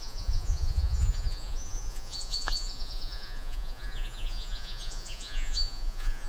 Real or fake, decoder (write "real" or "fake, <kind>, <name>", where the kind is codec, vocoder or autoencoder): fake, vocoder, Vocos